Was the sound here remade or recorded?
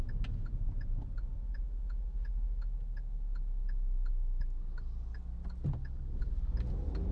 recorded